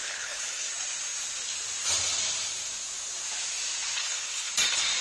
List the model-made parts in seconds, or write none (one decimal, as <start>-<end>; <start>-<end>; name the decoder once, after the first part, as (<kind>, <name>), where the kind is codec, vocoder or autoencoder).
0.0-0.7 (codec, HILCodec); 4.0-4.5